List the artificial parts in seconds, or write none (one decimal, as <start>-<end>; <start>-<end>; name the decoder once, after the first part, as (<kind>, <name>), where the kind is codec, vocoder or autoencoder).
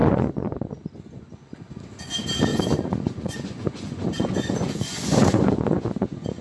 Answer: 0.0-1.8 (vocoder, Vocos); 2.5-6.4